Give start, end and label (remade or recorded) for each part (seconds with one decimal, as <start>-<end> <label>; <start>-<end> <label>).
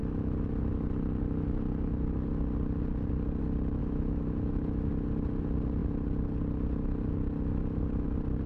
0.0-3.8 recorded; 3.8-4.9 remade; 4.9-8.5 recorded